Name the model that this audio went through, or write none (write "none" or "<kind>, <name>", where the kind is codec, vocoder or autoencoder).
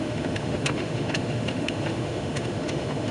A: autoencoder, DAC-VAE